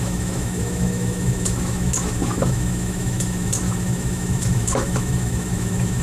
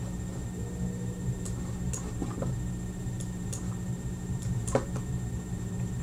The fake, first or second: first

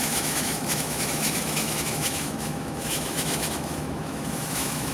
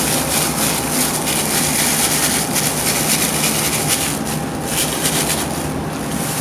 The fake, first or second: first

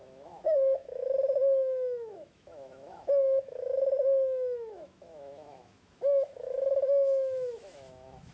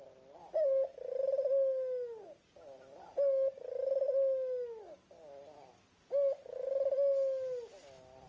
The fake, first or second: first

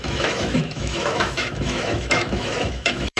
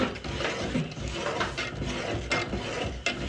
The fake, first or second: first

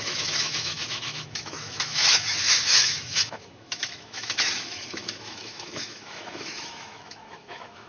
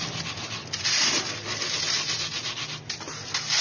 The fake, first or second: first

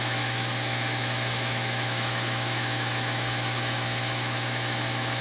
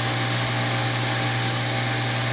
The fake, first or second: first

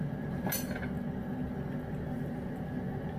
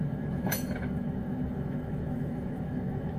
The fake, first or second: second